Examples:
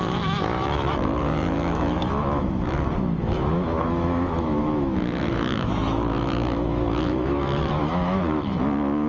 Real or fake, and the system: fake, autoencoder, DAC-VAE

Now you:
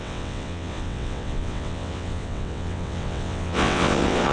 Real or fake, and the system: fake, vocoder, WaveNeXt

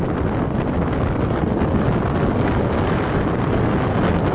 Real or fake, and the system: real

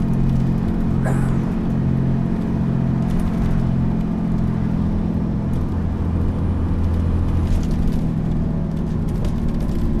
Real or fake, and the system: real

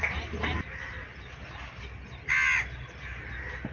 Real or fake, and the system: real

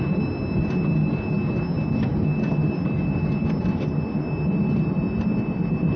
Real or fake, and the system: real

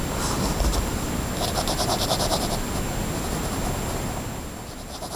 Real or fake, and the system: real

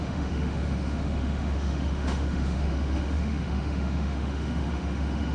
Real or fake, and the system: fake, autoencoder, DAC-VAE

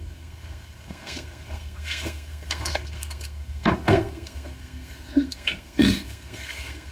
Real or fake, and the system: fake, codec, SNAC